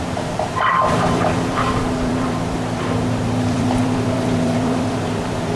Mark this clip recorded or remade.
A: remade